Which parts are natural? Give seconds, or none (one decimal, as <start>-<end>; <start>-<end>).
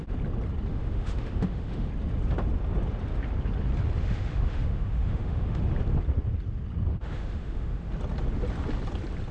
0.0-0.7; 1.9-4.0; 5.6-6.9; 7.9-9.3